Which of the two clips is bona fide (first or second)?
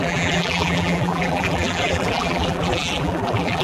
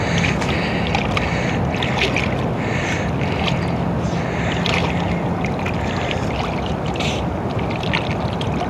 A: second